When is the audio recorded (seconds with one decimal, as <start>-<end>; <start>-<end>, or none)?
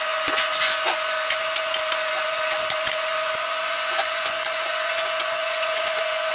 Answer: none